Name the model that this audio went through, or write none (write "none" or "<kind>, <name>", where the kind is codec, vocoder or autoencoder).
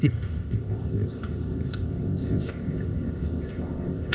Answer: codec, ZipCodec